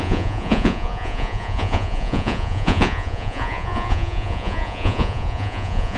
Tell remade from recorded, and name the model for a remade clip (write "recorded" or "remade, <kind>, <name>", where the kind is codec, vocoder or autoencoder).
remade, vocoder, Vocos